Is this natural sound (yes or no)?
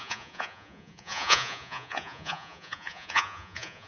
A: no